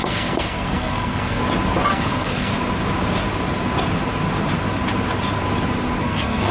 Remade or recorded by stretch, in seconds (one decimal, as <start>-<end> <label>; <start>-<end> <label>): 0.0-1.4 remade; 1.4-1.9 recorded; 1.9-2.5 remade; 2.5-6.0 recorded; 6.0-6.5 remade